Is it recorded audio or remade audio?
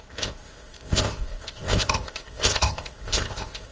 remade